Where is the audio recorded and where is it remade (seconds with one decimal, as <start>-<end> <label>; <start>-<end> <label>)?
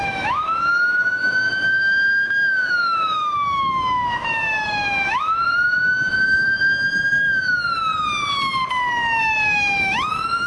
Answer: 0.0-7.9 remade; 7.9-9.2 recorded; 9.2-10.5 remade